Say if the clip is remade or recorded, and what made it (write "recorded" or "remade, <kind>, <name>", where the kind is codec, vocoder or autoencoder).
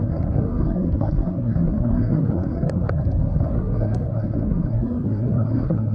remade, codec, SNAC